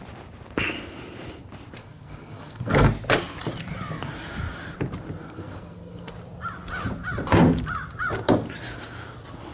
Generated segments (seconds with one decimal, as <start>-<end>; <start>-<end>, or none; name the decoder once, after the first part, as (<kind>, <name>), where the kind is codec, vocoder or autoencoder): 1.8-2.9 (codec, SNAC); 5.2-6.1